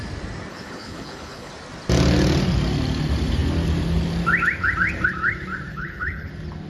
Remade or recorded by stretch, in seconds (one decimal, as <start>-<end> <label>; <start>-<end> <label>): 0.0-0.5 recorded; 0.5-1.5 remade; 1.5-5.7 recorded; 5.7-6.3 remade; 6.3-6.7 recorded